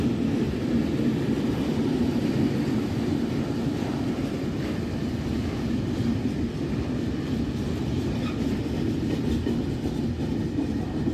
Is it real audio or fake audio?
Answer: real